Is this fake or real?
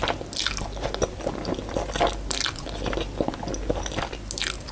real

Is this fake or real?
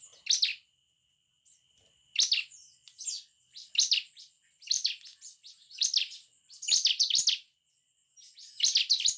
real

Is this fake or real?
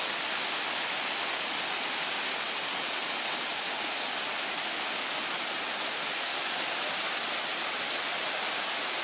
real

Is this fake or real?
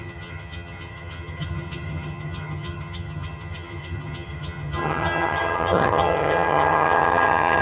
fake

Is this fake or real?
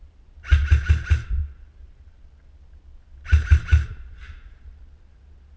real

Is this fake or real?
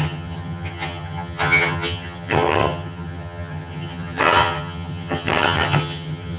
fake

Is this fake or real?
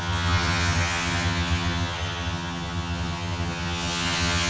fake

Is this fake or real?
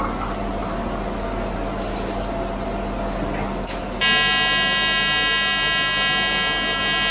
real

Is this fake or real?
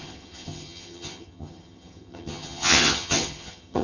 fake